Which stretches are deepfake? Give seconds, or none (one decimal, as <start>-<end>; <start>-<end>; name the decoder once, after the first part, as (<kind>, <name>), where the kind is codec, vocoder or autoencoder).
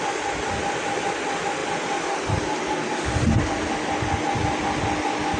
none